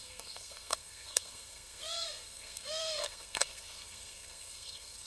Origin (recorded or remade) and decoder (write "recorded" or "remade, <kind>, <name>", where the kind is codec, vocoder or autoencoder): remade, codec, SNAC